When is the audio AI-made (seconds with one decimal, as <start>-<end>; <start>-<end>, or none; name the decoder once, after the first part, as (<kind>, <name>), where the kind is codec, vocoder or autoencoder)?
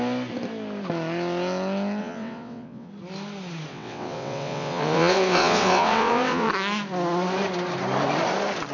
2.0-2.9 (vocoder, WaveNeXt); 3.7-6.5